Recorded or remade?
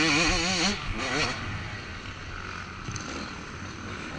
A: recorded